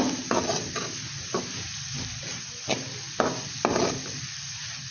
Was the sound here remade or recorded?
recorded